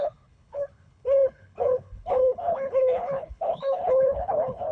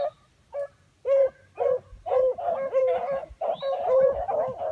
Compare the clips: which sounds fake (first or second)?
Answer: first